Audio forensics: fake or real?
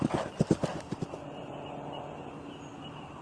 real